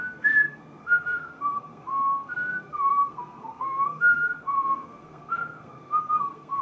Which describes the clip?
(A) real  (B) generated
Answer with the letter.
B